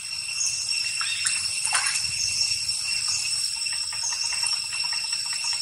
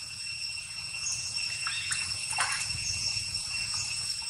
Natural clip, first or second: first